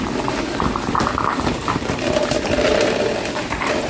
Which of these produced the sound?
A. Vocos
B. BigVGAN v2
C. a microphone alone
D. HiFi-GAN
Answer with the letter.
B